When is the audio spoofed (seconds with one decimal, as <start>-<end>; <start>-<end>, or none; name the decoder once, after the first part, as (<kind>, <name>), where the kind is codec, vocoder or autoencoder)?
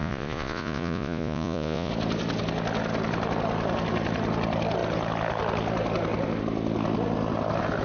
0.0-1.9 (vocoder, Vocos)